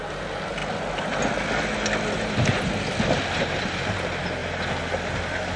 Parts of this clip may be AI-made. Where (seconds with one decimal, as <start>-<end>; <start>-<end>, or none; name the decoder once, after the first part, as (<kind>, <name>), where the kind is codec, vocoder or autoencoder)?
none